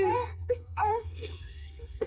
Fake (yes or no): yes